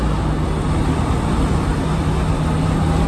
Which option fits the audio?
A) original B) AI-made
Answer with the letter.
A